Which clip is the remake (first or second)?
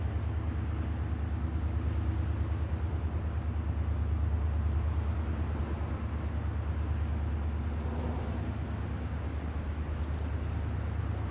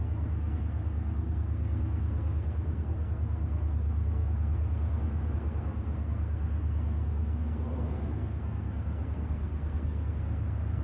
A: second